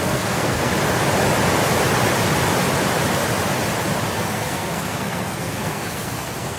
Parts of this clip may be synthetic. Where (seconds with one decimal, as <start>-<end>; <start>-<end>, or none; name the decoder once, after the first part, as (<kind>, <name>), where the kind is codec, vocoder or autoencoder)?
0.0-0.7 (codec, SNAC); 4.1-6.6

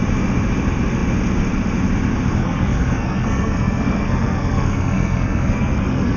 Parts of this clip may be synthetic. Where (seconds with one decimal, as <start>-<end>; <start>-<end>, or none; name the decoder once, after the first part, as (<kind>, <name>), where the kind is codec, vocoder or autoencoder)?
2.4-6.2 (codec, SNAC)

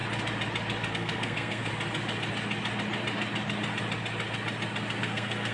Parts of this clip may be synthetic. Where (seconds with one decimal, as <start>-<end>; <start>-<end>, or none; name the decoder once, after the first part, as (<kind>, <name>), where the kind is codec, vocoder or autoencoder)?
0.9-1.7 (codec, SNAC); 5.0-5.5

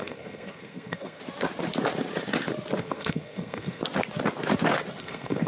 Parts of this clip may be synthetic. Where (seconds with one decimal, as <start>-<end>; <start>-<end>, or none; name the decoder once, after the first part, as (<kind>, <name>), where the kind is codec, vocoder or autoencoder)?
0.0-1.2 (codec, SNAC); 2.8-3.8; 5.0-5.5

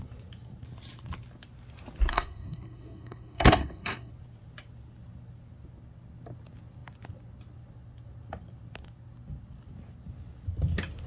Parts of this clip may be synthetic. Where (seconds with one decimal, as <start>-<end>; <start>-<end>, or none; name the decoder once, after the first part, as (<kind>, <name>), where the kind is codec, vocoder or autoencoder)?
2.1-4.1 (codec, SNAC)

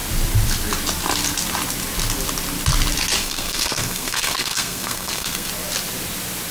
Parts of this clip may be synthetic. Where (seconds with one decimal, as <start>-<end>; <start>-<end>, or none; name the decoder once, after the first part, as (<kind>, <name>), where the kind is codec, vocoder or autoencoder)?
3.2-5.5 (codec, SNAC)